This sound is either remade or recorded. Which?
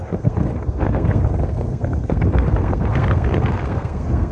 remade